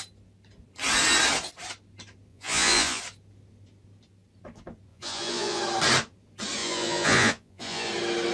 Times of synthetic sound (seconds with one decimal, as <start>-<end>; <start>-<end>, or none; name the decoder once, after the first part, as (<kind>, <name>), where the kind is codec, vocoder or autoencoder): 2.3-3.0 (vocoder, Vocos); 4.9-5.6; 6.6-7.9

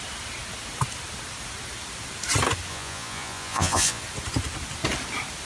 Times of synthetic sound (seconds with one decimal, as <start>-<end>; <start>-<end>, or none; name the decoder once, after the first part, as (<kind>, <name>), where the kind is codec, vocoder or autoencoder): 2.7-4.0 (vocoder, Vocos)

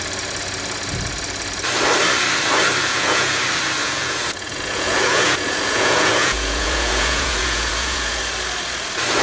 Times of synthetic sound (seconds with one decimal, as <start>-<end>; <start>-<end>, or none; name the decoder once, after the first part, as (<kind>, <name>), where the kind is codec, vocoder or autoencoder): 2.8-3.4 (vocoder, Vocos); 3.8-8.2

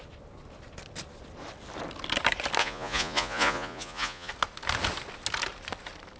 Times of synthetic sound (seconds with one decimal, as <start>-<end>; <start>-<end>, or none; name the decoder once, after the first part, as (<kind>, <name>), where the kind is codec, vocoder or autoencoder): 2.6-4.3 (vocoder, Vocos)